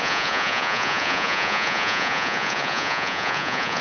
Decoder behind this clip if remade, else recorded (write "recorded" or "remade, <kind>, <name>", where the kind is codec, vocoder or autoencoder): remade, vocoder, Vocos